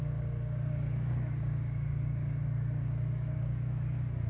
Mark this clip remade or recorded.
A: remade